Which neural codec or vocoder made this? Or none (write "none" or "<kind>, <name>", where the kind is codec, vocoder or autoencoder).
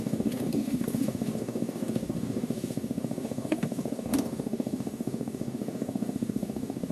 codec, DAC